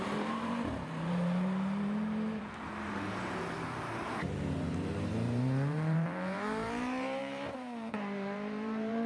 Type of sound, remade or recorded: remade